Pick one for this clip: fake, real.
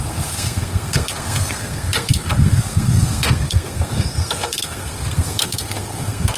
fake